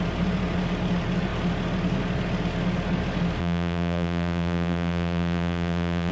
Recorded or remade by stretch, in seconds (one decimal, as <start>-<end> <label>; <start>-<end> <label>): 0.0-3.4 recorded; 3.4-6.1 remade